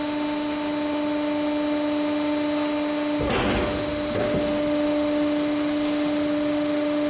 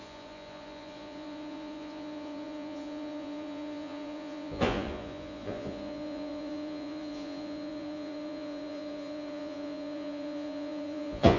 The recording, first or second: first